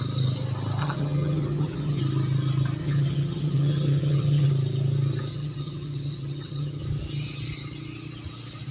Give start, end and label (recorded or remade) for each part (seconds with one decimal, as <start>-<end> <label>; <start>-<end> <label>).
0.0-0.8 recorded; 0.8-2.0 remade; 2.0-2.8 recorded; 2.8-4.5 remade; 4.5-5.3 recorded; 5.3-6.8 remade; 6.8-8.7 recorded